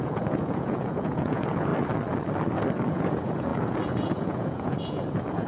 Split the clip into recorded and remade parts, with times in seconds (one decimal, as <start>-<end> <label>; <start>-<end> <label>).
0.0-1.7 remade; 1.7-2.9 recorded; 2.9-5.5 remade